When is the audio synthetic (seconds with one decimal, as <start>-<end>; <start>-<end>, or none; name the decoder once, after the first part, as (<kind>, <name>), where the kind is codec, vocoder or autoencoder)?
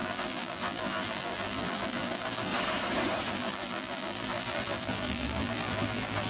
0.0-2.5 (vocoder, BigVGAN v2); 3.3-6.3